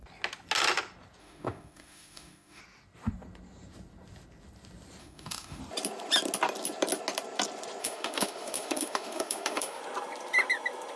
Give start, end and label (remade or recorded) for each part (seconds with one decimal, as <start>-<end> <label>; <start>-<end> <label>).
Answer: 0.0-1.2 recorded; 1.2-2.6 remade; 2.6-5.0 recorded; 5.0-5.6 remade; 5.6-7.8 recorded; 7.8-9.8 remade; 9.8-11.0 recorded